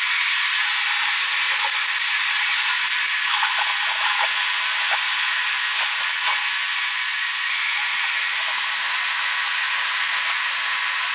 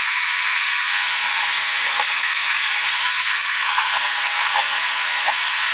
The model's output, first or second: second